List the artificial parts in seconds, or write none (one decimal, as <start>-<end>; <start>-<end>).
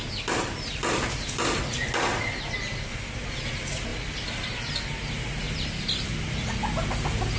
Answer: none